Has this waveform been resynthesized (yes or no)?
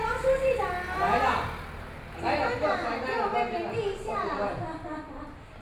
no